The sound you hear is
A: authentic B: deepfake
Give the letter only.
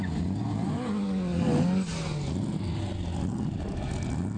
A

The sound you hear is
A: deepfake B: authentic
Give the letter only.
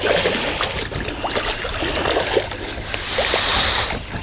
B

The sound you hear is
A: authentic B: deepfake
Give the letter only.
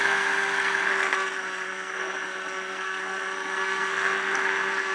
B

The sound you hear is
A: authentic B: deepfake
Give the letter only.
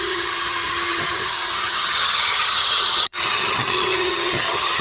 B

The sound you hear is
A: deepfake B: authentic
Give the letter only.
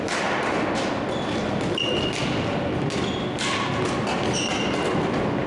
B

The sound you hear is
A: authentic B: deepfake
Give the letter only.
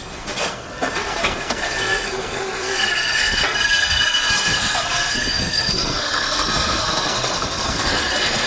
B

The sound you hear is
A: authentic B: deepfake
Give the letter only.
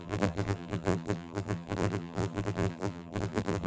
B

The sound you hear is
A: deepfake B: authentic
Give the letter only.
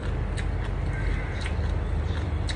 B